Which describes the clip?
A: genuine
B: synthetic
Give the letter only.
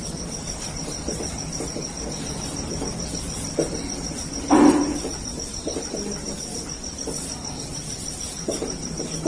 A